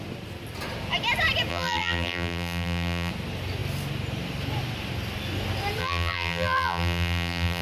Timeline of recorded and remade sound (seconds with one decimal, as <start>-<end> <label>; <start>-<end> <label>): 0.0-1.5 recorded; 1.5-3.1 remade; 3.1-5.8 recorded; 5.8-7.6 remade